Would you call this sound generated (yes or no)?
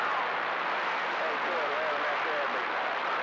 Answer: no